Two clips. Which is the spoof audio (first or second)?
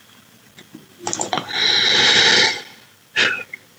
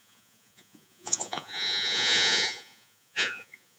second